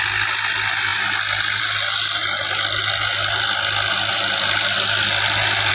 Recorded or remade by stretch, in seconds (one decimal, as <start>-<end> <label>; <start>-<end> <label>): 0.0-5.7 recorded